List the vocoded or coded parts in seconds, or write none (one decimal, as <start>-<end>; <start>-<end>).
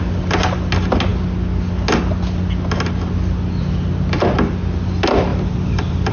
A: 5.3-6.1